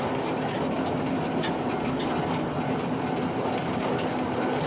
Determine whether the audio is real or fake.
real